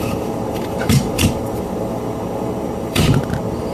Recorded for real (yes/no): no